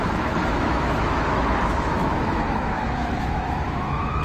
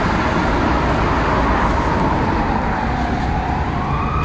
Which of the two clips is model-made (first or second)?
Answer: first